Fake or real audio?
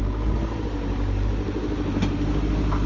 real